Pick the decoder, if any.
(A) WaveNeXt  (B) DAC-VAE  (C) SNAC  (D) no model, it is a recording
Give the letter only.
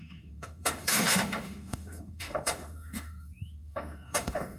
B